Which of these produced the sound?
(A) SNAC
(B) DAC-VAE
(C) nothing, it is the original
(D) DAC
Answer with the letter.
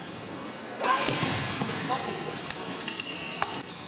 A